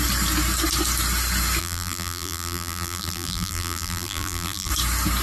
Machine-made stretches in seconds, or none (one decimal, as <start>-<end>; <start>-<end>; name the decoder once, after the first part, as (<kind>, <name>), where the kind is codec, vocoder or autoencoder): 1.6-4.7 (vocoder, BigVGAN v2)